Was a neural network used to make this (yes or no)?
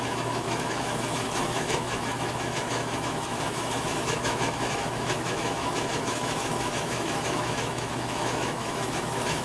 yes